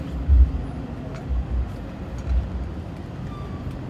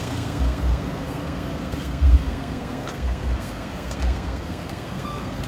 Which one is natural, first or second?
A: first